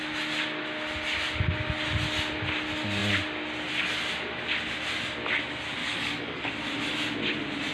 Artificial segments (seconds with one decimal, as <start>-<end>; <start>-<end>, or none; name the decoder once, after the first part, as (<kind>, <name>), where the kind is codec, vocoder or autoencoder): 5.8-6.5 (codec, DAC)